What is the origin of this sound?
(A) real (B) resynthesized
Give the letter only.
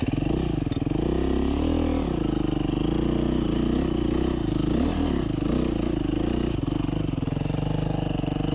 A